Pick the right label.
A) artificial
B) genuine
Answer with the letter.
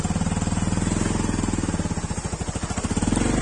B